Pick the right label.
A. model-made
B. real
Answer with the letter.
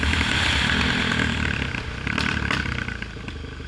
B